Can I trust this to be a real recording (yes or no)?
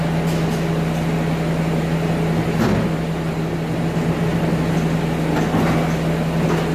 yes